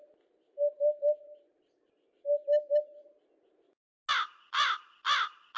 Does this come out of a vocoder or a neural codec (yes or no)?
no